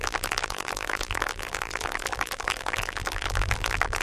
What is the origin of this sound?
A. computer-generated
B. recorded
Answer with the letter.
A